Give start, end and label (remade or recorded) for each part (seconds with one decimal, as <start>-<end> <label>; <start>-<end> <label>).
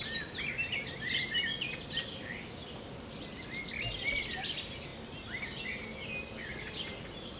0.0-7.4 recorded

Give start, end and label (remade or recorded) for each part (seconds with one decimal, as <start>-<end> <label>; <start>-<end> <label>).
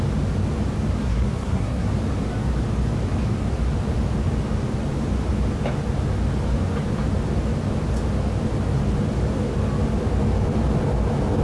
0.0-1.0 recorded; 1.0-1.9 remade; 1.9-11.4 recorded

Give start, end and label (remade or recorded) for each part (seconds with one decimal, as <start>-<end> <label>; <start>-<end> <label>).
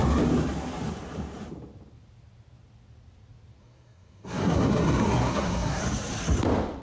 0.0-3.6 recorded; 3.6-5.8 remade; 5.8-6.8 recorded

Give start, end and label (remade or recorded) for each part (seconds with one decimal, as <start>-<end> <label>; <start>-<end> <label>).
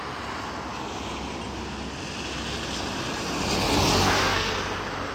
0.0-4.0 recorded; 4.0-4.5 remade; 4.5-5.1 recorded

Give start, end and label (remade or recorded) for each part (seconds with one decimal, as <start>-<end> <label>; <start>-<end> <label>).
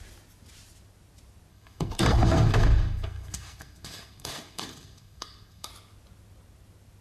0.0-1.5 recorded; 1.5-5.7 remade; 5.7-7.0 recorded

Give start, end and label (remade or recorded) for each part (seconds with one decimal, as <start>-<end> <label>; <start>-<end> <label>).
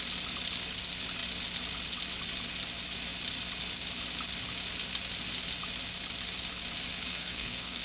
0.0-7.1 recorded; 7.1-7.8 remade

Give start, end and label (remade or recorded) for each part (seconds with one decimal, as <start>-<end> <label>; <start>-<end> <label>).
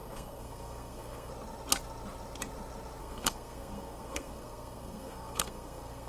0.0-1.3 remade; 1.3-3.0 recorded; 3.0-6.1 remade